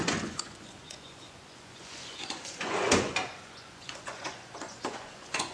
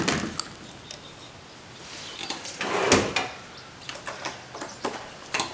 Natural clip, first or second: second